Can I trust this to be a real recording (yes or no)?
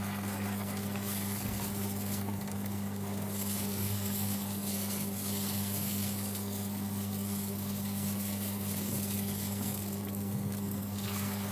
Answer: no